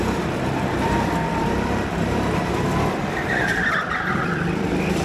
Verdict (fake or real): fake